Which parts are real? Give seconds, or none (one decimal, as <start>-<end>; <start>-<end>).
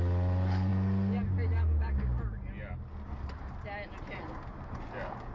0.0-5.3